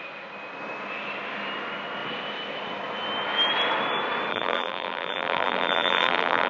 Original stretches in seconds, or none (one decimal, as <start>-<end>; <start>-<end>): 0.0-4.3